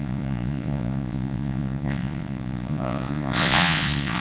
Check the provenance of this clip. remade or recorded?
remade